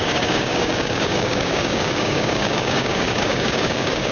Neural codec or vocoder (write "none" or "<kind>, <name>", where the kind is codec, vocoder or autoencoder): codec, DAC